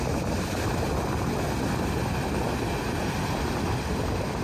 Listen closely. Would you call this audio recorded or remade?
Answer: recorded